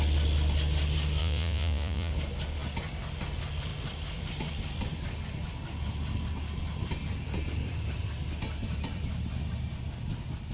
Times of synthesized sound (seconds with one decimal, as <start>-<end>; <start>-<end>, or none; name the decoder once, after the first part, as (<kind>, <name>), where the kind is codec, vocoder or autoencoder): 1.2-2.1 (vocoder, Vocos)